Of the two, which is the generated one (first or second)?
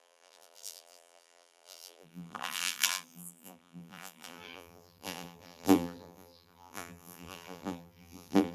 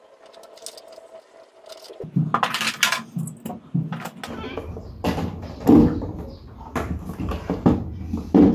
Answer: first